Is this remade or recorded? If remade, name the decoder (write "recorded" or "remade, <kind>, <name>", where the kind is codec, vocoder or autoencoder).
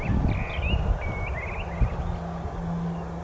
recorded